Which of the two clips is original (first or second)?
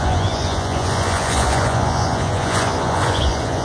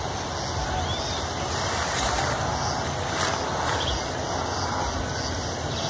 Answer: second